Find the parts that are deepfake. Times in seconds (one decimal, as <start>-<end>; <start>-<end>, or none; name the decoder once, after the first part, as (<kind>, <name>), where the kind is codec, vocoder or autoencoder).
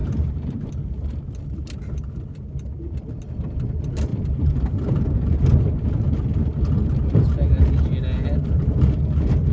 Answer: 0.0-0.7 (vocoder, BigVGAN v2); 1.6-2.3; 4.1-5.9